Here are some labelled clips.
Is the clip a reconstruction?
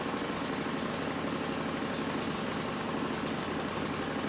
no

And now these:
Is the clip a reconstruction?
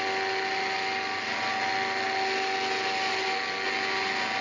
no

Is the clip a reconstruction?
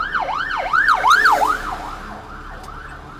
no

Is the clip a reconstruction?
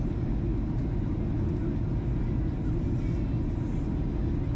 no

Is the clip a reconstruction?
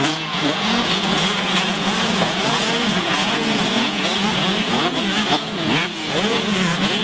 yes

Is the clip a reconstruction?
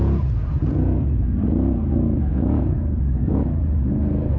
yes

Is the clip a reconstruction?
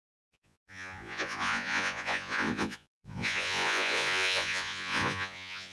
yes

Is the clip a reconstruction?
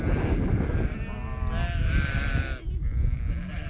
no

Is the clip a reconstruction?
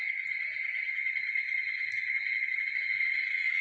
yes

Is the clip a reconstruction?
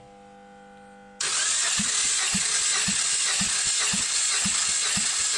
no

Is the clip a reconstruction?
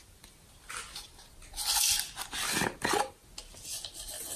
no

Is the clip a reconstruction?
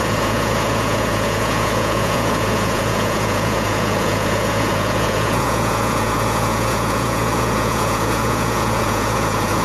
yes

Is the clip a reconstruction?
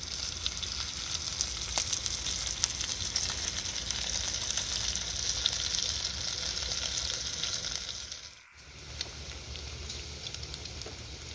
no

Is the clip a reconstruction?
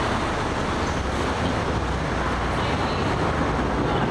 no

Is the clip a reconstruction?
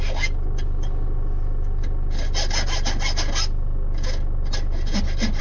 no